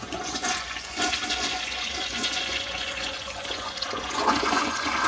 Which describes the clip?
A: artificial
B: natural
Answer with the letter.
A